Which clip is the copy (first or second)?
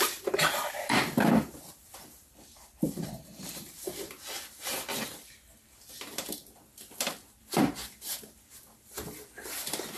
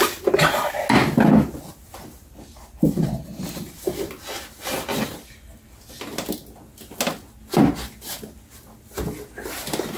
first